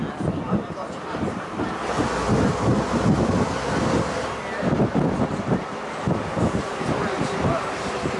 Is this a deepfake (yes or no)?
no